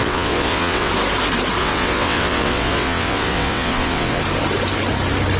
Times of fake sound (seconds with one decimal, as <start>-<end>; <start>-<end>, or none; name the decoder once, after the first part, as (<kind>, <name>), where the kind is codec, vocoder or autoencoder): 0.0-0.9 (vocoder, WaveNeXt); 1.6-4.2